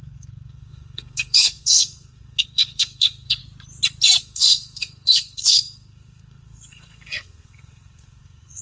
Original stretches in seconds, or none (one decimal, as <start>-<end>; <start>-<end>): 3.4-4.2